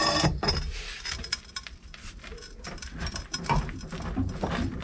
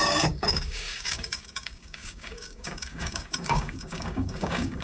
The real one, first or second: first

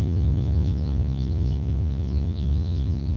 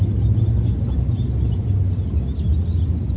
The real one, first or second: second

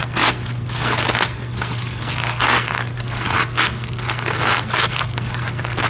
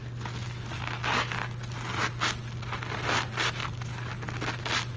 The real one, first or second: second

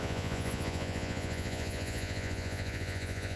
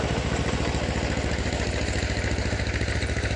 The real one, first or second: second